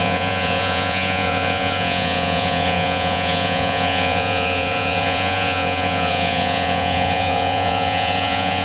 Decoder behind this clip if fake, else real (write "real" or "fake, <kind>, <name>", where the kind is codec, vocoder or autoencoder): fake, vocoder, Vocos